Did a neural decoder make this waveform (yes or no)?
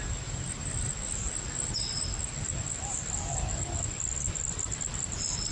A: no